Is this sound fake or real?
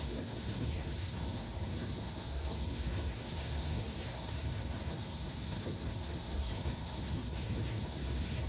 fake